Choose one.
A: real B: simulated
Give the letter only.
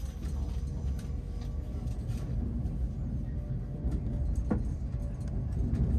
A